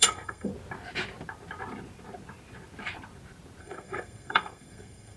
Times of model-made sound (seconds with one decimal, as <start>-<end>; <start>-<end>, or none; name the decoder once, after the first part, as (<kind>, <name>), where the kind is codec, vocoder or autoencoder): 0.0-0.5 (codec, SNAC); 3.6-5.2